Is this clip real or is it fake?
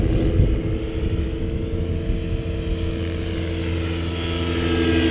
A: real